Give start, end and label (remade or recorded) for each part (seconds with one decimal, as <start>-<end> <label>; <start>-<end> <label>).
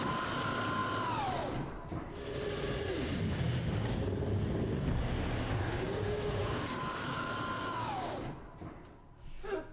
0.0-5.0 recorded; 5.0-8.1 remade; 8.1-9.7 recorded